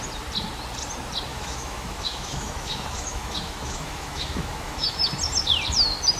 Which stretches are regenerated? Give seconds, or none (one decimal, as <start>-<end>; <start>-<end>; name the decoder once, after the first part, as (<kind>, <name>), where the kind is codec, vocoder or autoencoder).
1.3-5.0 (autoencoder, DAC-VAE)